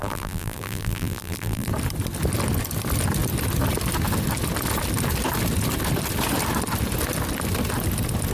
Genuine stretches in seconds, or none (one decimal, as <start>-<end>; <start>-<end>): 1.7-8.3